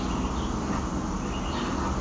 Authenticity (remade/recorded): recorded